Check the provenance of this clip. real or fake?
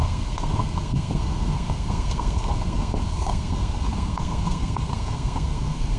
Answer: fake